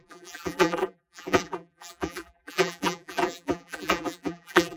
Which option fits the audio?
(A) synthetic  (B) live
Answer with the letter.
A